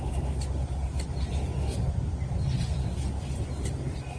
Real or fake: real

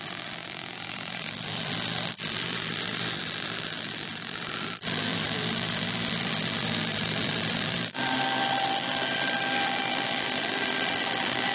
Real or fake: fake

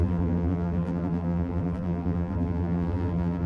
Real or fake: fake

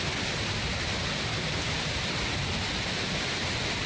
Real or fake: real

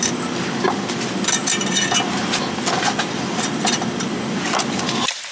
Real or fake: real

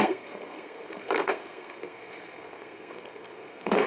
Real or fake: fake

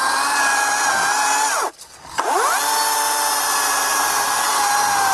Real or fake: real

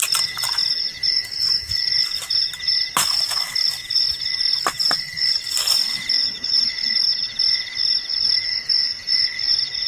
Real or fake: real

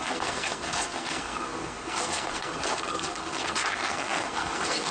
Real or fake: fake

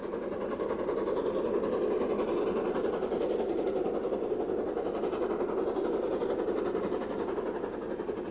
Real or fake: real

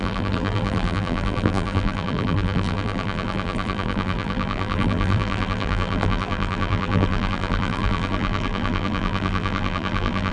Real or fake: fake